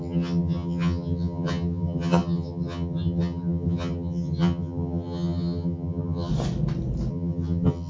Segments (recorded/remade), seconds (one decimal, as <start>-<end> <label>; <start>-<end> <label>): 0.0-6.3 remade; 6.3-7.1 recorded; 7.1-7.9 remade